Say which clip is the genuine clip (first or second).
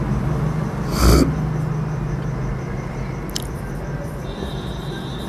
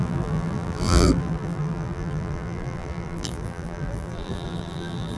first